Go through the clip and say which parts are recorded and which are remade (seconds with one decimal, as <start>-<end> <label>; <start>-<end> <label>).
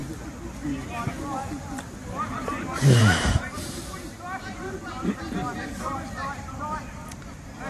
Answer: 0.0-2.0 recorded; 2.0-3.8 remade; 3.8-4.4 recorded; 4.4-7.3 remade; 7.3-7.7 recorded